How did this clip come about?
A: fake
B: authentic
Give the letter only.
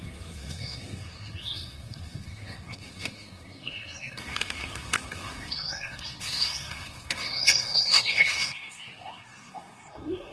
A